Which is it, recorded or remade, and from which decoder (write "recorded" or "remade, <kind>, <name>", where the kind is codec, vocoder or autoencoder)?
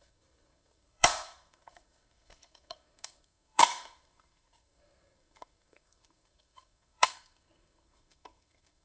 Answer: remade, codec, SNAC